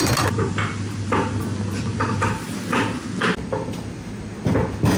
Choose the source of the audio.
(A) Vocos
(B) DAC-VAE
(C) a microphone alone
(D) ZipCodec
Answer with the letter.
C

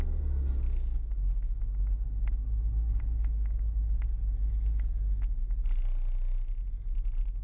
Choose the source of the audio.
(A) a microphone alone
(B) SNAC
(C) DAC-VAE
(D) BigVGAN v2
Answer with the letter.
A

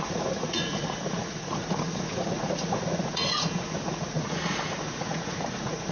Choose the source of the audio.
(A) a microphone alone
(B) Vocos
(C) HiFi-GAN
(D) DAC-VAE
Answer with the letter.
B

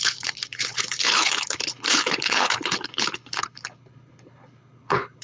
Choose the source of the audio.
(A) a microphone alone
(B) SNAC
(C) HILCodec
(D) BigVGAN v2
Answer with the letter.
C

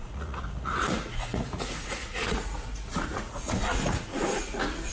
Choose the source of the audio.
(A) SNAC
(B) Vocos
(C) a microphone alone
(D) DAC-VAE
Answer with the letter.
B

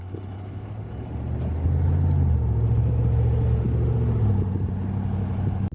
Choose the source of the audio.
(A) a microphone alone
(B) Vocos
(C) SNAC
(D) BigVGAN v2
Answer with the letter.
A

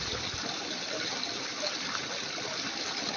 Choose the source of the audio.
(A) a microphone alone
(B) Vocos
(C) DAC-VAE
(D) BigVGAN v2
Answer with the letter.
A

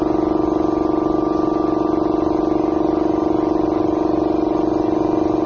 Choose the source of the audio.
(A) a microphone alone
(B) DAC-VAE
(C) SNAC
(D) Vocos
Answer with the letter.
A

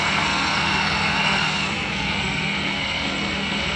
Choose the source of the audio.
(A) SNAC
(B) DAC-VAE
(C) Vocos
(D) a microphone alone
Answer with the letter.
A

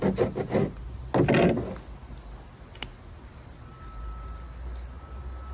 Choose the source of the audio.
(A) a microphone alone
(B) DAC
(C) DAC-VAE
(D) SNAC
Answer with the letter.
A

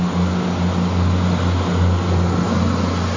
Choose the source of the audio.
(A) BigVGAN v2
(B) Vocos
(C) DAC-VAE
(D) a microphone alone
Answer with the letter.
D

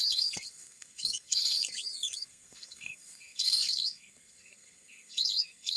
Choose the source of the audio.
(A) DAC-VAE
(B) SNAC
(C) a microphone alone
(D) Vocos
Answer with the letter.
B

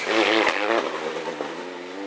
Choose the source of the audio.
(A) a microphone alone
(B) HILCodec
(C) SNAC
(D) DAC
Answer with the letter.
A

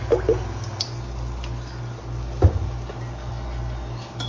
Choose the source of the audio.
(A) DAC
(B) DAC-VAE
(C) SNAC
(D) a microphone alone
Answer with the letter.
D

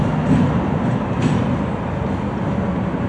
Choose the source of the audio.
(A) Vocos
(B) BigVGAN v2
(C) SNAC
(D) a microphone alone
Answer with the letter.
D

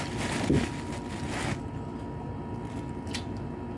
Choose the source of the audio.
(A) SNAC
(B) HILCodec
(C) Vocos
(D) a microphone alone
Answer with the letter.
D